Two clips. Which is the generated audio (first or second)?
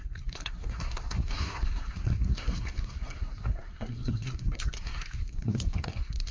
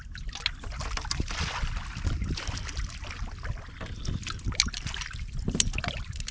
first